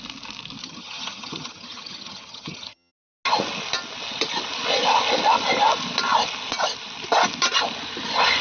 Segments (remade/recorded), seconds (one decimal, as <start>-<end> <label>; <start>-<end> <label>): 0.0-0.6 recorded; 0.6-2.9 remade; 2.9-8.4 recorded